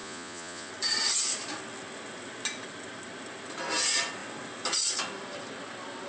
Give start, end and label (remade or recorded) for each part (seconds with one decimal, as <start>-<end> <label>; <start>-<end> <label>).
0.0-0.7 remade; 0.7-6.1 recorded